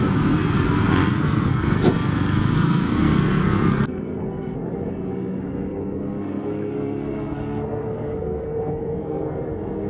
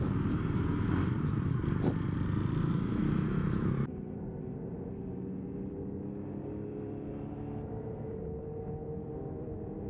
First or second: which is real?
second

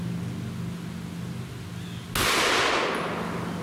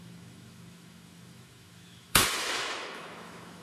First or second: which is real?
first